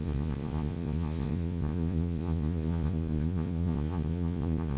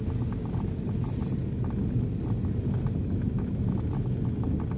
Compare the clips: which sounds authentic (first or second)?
second